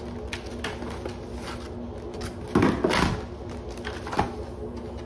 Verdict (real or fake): real